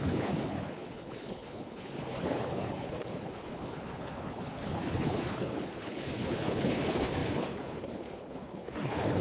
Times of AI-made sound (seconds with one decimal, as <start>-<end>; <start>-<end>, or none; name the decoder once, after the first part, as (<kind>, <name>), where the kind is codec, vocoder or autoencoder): 0.0-9.2 (codec, HILCodec)

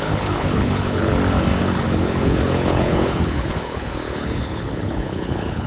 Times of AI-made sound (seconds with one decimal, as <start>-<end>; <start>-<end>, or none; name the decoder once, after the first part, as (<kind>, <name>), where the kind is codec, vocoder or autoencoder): 0.0-1.1 (codec, HILCodec); 1.6-5.7

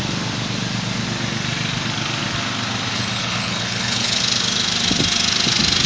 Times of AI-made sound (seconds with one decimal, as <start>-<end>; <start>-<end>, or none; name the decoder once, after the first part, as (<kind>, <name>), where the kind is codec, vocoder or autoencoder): 2.9-4.2 (codec, HILCodec)

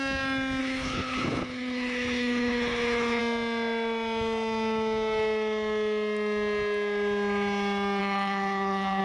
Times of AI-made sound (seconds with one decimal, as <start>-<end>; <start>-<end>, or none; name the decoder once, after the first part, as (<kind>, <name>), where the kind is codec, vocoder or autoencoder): 0.6-3.2 (codec, HILCodec); 8.0-9.0

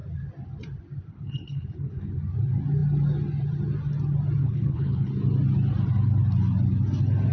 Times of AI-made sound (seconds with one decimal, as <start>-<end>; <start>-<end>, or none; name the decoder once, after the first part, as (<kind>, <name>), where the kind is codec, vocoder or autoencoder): 1.1-2.1 (codec, HILCodec); 4.4-5.1